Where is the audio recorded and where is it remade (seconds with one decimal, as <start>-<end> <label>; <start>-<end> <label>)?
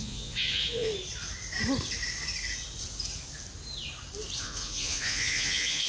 0.0-0.9 remade; 0.9-4.4 recorded; 4.4-5.9 remade